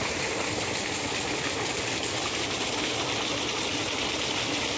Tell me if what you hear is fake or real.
real